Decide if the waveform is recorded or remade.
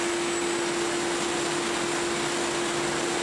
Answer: recorded